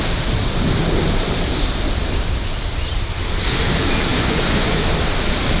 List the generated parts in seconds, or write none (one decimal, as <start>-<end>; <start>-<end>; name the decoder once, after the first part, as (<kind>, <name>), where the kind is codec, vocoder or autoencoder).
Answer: 4.1-4.8 (vocoder, Vocos)